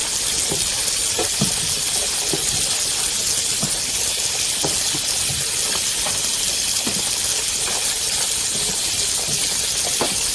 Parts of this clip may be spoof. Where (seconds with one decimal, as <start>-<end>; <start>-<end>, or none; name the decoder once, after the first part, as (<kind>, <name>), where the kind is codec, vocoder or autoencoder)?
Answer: none